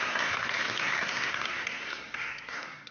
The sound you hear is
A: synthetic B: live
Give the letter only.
A